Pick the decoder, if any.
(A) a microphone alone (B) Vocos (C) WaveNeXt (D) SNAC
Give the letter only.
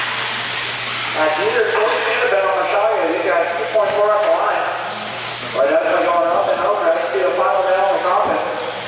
A